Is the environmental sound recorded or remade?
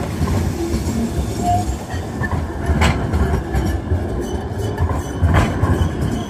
recorded